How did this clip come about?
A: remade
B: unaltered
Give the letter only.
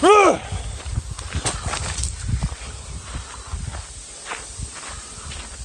B